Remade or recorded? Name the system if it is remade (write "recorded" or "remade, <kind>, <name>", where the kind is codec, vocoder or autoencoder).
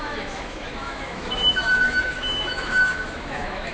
remade, autoencoder, DAC-VAE